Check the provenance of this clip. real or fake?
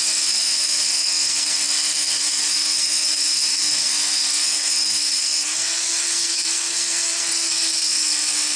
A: fake